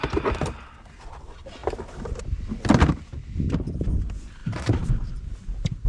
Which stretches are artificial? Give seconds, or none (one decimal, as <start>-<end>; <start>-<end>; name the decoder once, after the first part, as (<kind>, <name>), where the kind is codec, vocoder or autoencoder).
1.6-2.2 (vocoder, BigVGAN v2); 4.4-5.9